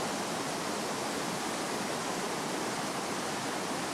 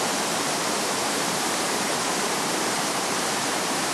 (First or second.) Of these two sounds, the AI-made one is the second